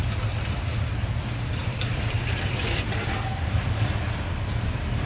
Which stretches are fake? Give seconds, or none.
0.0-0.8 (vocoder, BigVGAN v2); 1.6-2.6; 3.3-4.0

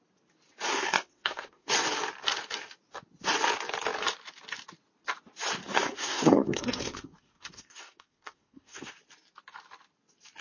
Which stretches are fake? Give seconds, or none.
0.7-1.7 (codec, SNAC); 5.6-8.9

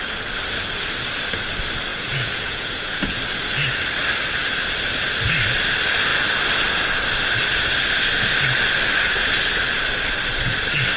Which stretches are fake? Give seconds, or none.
1.9-3.1 (vocoder, Vocos)

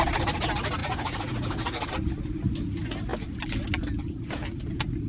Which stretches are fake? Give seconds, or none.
none

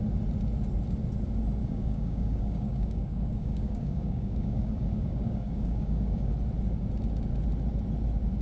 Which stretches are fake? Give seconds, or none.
1.6-6.3 (codec, DAC)